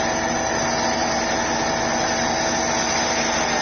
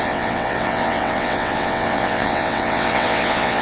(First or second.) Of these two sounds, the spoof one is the second